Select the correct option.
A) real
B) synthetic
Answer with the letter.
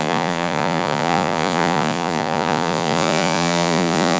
B